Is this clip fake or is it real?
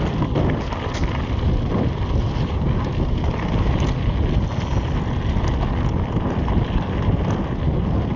real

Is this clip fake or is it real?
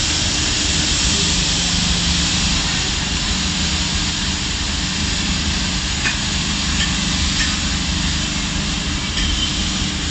real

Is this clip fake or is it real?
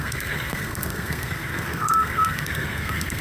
fake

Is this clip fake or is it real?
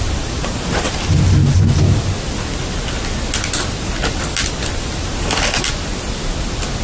real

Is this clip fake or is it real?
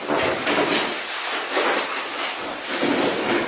real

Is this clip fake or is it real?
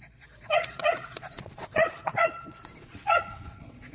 fake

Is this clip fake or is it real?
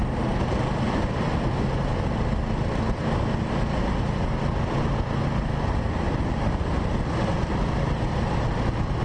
real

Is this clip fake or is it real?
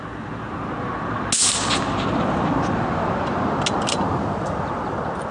real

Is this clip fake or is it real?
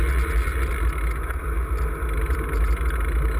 real